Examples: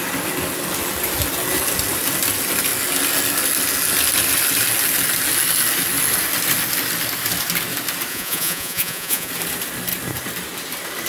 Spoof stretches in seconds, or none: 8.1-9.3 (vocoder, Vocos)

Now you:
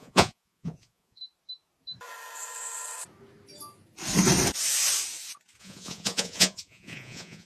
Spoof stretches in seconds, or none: 0.0-1.2 (vocoder, Vocos); 5.6-7.5

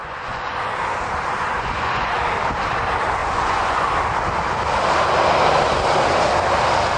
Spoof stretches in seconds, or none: 0.0-0.7 (vocoder, Vocos); 1.5-2.2; 3.2-3.9

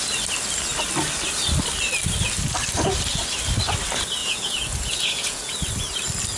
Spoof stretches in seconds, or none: 4.2-5.5 (vocoder, Vocos)

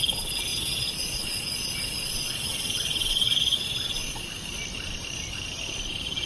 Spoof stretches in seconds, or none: 0.5-4.3 (vocoder, Vocos)

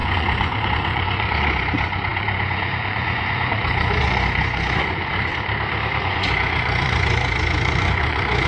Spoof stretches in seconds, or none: 0.0-5.3 (vocoder, Vocos); 6.0-8.5